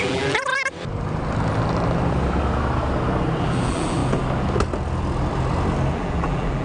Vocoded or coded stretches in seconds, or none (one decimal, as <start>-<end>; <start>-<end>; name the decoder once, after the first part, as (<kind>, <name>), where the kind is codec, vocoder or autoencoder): 0.0-0.5 (vocoder, BigVGAN v2); 3.4-4.0; 5.9-6.6